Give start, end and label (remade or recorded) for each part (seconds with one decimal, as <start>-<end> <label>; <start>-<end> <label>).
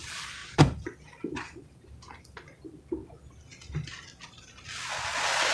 0.0-0.4 recorded; 0.4-2.2 remade; 2.2-5.5 recorded